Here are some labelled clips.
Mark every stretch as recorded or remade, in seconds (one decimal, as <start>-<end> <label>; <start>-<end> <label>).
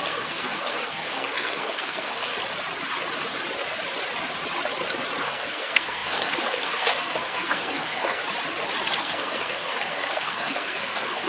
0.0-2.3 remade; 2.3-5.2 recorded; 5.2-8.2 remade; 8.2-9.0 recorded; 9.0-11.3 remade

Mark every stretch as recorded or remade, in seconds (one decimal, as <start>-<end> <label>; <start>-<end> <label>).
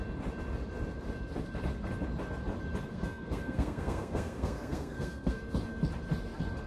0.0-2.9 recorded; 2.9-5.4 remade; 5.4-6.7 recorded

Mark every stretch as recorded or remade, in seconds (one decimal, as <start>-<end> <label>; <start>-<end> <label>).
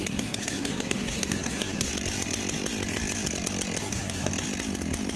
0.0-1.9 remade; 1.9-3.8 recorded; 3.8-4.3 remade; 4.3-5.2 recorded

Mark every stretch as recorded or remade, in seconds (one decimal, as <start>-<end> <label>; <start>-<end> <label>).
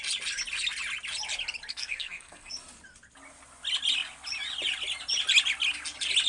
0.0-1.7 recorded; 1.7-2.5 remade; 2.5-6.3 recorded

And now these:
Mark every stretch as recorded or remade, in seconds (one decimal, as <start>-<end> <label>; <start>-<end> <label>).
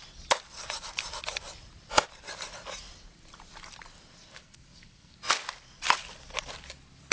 0.0-4.4 recorded; 4.4-5.2 remade; 5.2-7.1 recorded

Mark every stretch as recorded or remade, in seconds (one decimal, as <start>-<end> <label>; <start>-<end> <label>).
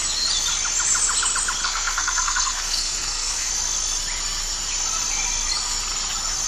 0.0-1.6 recorded; 1.6-3.5 remade; 3.5-6.5 recorded